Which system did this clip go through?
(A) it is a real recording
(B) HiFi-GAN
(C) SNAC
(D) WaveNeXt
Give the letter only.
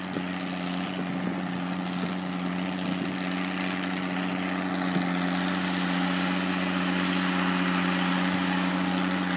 A